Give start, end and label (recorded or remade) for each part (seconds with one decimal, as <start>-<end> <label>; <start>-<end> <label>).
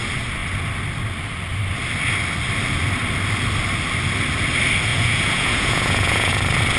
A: 0.0-4.9 recorded; 4.9-6.3 remade; 6.3-6.8 recorded